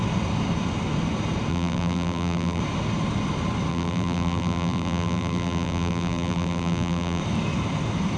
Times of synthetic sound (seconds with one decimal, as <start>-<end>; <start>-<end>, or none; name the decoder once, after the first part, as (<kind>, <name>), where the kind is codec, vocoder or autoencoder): 1.5-2.6 (vocoder, BigVGAN v2); 3.7-7.2